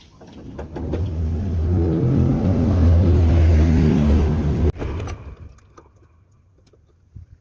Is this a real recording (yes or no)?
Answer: yes